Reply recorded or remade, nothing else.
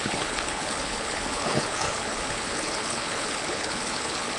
remade